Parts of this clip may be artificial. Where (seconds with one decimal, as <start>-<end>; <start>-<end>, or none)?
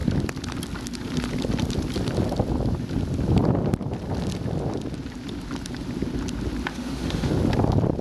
6.7-7.3